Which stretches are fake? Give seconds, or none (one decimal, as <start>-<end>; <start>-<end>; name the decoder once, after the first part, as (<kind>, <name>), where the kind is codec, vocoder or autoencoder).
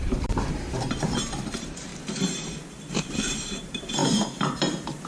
0.0-1.9 (vocoder, BigVGAN v2); 2.9-5.1